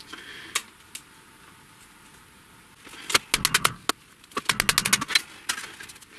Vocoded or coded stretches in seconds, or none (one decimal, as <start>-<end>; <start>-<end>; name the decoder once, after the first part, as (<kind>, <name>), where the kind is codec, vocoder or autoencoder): none